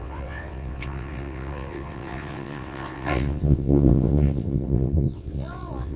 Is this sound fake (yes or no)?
yes